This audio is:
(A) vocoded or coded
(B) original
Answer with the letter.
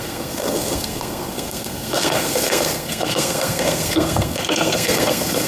A